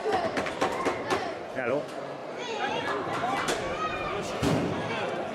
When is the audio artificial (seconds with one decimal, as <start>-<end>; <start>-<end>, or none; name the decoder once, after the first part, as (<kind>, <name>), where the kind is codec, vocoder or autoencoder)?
0.0-5.3 (vocoder, BigVGAN v2)